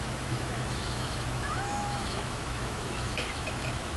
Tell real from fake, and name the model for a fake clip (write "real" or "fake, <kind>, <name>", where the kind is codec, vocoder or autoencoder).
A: fake, autoencoder, DAC-VAE